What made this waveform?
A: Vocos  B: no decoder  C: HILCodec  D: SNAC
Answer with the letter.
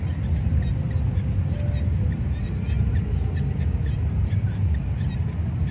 B